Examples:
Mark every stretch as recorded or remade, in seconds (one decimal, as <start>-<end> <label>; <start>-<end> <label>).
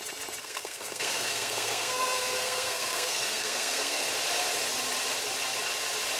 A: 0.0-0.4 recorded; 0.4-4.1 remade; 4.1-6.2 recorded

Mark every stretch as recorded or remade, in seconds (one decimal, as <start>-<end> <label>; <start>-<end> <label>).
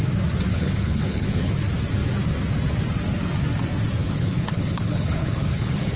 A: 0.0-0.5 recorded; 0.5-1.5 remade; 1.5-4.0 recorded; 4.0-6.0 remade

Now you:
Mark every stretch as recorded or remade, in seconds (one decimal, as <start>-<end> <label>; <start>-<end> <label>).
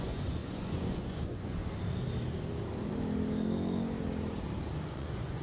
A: 0.0-1.6 remade; 1.6-4.8 recorded; 4.8-5.4 remade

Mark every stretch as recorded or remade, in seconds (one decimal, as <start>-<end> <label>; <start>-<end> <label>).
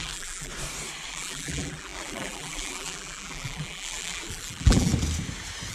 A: 0.0-0.5 remade; 0.5-1.1 recorded; 1.1-4.9 remade; 4.9-5.7 recorded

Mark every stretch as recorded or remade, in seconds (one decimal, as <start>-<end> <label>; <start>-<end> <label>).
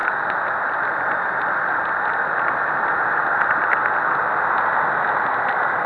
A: 0.0-5.9 recorded